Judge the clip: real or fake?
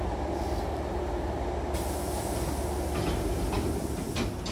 real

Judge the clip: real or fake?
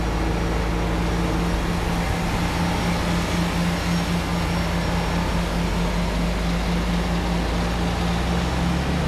real